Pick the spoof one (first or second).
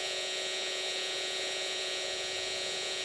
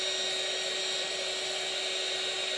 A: first